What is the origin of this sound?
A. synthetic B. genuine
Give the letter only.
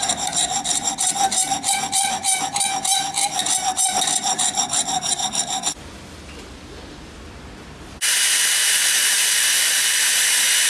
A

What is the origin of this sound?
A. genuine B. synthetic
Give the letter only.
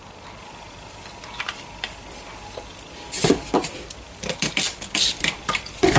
B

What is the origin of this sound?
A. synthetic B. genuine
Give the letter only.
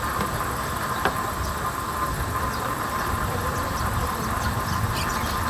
B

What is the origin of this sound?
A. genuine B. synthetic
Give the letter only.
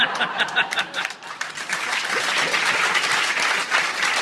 B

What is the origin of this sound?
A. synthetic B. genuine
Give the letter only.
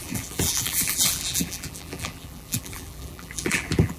A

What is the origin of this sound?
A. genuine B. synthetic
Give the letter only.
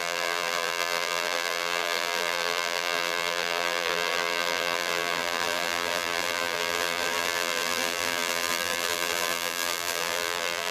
B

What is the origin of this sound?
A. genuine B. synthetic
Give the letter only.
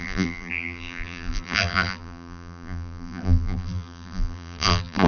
B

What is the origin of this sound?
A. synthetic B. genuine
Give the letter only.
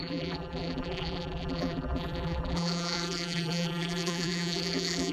A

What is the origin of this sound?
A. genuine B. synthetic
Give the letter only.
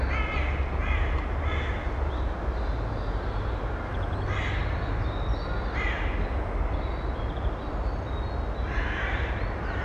A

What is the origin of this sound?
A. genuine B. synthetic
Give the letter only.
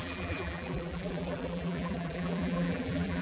B